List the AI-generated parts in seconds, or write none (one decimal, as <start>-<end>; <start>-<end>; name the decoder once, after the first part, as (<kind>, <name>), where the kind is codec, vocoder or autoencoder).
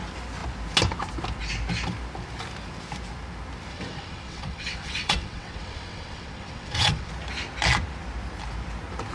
3.7-7.1 (vocoder, WaveNeXt)